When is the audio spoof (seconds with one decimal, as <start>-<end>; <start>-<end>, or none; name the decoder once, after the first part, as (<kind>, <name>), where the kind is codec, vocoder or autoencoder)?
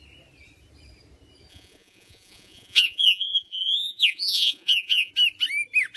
1.5-5.1 (vocoder, Vocos)